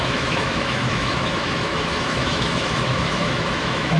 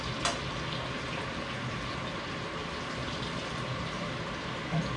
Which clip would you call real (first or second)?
second